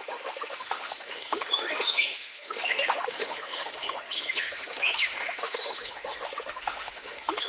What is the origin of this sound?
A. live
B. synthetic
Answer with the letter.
B